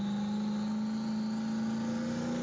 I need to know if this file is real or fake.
real